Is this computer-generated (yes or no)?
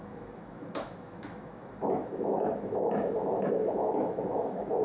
yes